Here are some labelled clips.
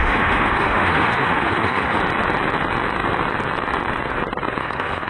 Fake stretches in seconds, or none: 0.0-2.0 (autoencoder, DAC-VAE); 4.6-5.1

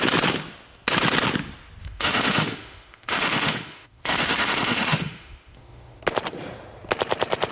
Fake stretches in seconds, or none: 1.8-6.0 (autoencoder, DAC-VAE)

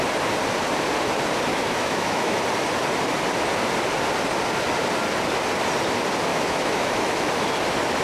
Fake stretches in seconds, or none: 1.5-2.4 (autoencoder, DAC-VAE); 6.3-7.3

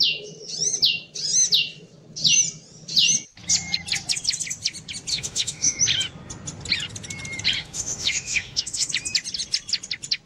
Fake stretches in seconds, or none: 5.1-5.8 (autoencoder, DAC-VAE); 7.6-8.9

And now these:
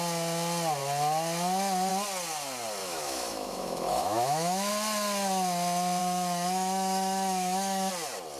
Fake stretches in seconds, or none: 2.8-4.7 (autoencoder, DAC-VAE); 6.0-7.9

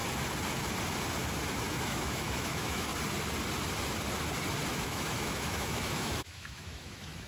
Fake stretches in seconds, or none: 1.7-2.9 (autoencoder, DAC-VAE); 4.7-7.3